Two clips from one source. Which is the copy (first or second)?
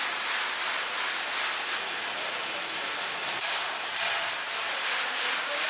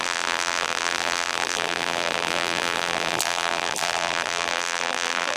second